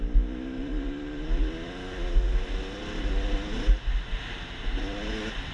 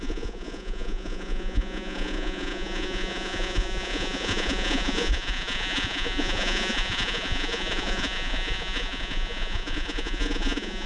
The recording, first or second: first